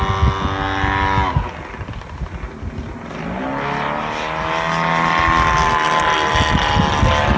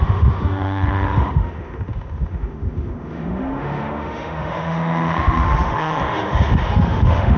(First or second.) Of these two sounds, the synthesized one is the second